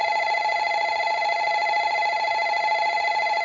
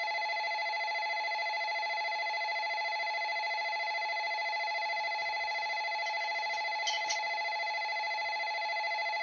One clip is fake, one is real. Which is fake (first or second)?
first